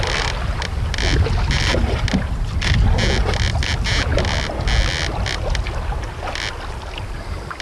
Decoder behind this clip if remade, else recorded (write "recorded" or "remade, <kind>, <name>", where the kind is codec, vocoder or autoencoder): recorded